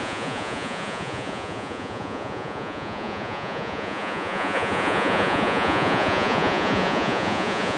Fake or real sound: fake